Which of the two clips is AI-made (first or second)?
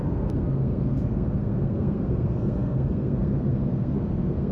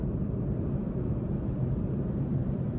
first